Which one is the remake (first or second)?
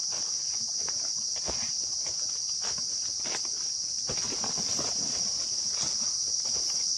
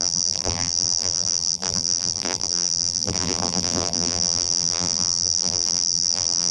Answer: second